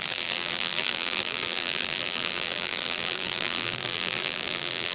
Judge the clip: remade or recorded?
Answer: remade